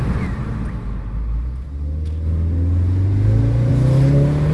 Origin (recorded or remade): recorded